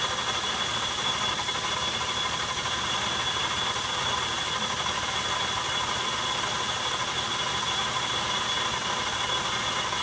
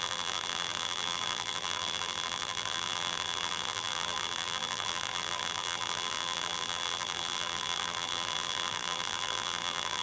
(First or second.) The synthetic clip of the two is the second